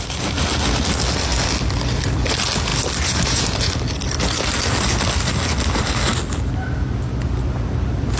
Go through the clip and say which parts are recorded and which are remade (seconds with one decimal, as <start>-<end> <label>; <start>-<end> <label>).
0.0-8.2 recorded